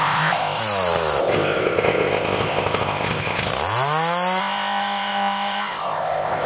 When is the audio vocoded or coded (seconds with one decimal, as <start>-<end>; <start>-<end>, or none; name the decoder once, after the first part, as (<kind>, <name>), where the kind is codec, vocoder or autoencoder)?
0.0-0.6 (codec, ZipCodec); 1.2-3.5; 4.4-6.5